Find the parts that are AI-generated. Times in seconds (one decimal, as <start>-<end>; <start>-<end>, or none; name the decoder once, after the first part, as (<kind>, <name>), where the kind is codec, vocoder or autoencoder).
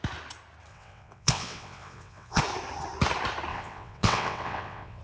0.7-2.4 (vocoder, WaveNeXt); 3.5-5.0